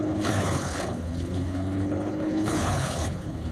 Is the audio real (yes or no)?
no